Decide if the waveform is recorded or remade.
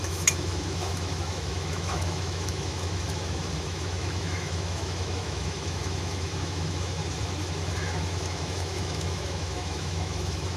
remade